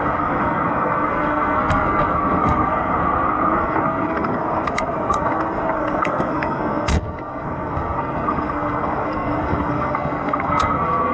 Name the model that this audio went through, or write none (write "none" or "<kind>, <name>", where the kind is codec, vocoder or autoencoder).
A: codec, SNAC